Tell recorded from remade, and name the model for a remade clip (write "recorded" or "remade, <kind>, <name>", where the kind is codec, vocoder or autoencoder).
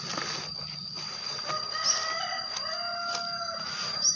recorded